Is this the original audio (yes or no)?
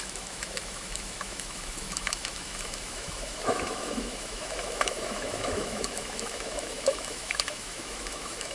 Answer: no